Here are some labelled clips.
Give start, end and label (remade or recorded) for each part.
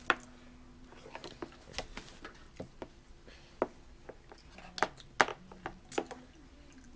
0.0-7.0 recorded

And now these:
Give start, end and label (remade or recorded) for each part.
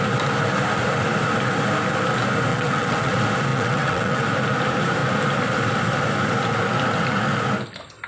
0.0-2.5 recorded; 2.5-3.1 remade; 3.1-3.5 recorded; 3.5-4.2 remade; 4.2-8.1 recorded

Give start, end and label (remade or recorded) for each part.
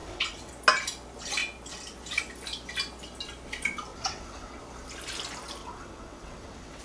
0.0-0.5 remade; 0.5-3.9 recorded; 3.9-4.6 remade; 4.6-5.6 recorded; 5.6-6.8 remade